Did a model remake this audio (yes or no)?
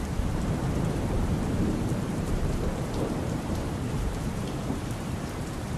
yes